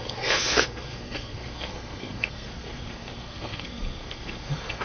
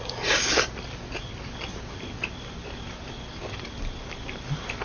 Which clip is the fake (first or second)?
first